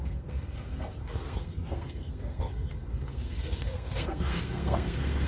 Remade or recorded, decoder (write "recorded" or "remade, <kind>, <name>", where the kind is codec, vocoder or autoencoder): remade, codec, SNAC